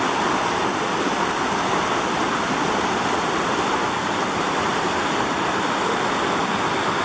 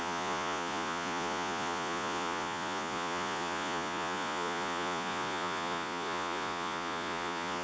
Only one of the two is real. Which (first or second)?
first